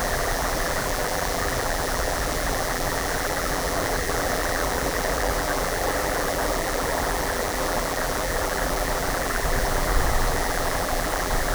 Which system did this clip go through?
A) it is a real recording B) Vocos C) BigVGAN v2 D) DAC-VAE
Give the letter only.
C